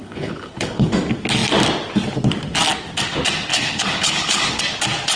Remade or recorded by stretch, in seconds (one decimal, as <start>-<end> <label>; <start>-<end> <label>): 0.0-0.9 remade; 0.9-3.5 recorded; 3.5-4.6 remade; 4.6-5.2 recorded